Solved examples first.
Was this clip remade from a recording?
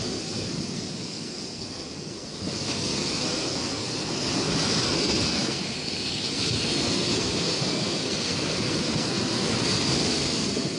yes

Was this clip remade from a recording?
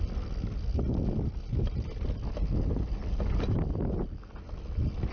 no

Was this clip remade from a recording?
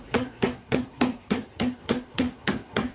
yes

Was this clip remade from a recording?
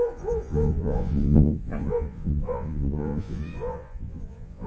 yes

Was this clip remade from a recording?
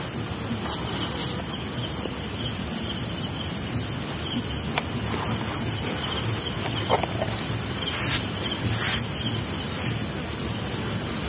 no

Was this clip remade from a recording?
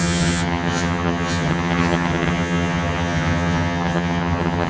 yes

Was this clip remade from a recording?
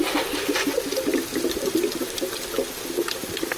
no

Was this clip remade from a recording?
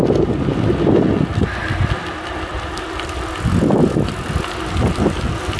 no